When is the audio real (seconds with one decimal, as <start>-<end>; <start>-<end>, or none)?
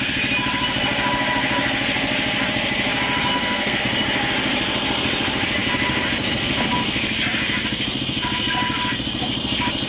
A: 0.0-3.3; 3.8-9.9